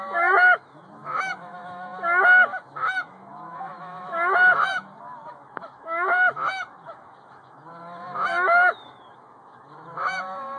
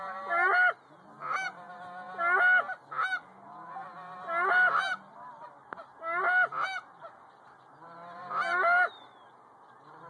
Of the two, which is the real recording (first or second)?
second